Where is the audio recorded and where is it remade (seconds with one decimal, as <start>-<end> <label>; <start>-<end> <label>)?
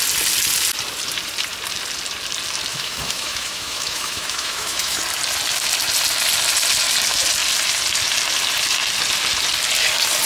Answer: 0.0-2.7 recorded; 2.7-5.0 remade; 5.0-10.3 recorded